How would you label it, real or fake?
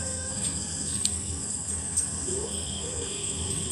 fake